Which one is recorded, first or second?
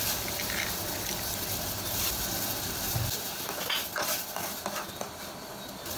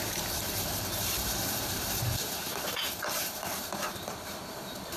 first